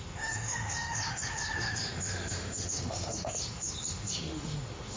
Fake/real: fake